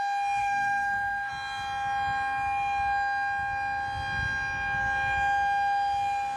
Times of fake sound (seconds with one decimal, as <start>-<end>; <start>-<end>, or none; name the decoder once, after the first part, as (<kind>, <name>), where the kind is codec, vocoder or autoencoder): 0.4-1.3 (codec, SNAC)